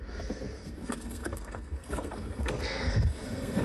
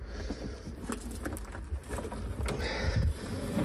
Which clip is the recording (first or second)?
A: second